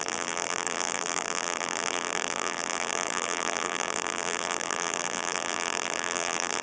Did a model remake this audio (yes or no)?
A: yes